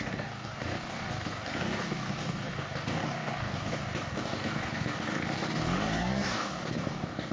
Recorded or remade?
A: remade